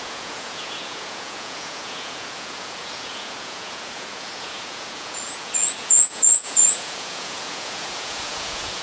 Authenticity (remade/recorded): remade